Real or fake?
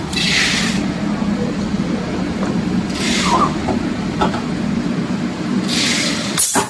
real